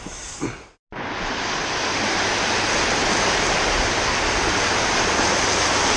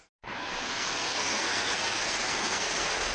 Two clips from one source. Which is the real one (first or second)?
first